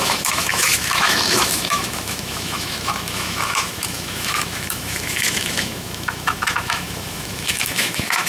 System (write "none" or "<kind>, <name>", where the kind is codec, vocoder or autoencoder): autoencoder, DAC-VAE